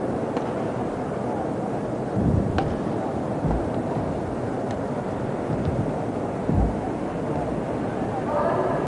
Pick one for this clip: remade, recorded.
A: remade